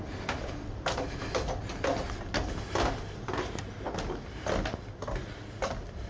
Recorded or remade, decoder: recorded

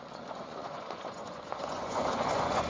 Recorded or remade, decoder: remade, vocoder, Vocos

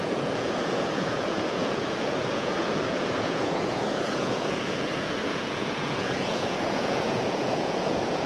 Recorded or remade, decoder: remade, vocoder, Vocos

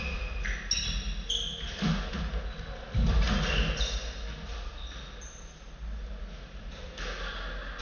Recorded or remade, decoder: recorded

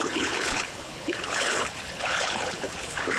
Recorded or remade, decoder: remade, codec, HILCodec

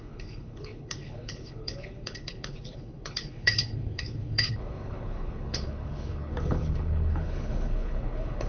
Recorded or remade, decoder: remade, codec, HILCodec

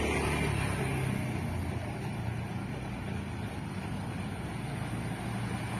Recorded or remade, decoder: recorded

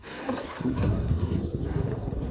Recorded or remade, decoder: remade, codec, SNAC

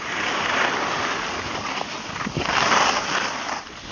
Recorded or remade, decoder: remade, vocoder, BigVGAN v2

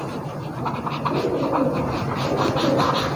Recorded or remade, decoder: recorded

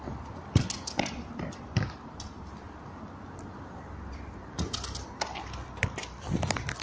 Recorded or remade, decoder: recorded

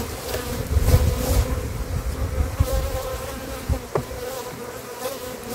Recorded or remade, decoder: remade, vocoder, BigVGAN v2